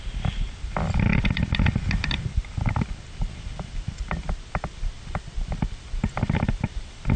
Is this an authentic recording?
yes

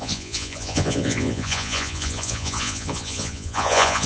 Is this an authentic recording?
no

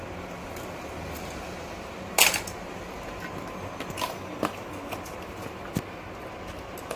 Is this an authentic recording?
yes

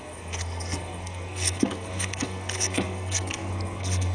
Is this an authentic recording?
no